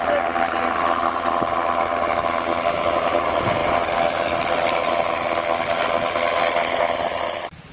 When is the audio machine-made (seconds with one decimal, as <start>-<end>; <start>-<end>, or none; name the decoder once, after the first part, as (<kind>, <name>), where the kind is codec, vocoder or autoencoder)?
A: none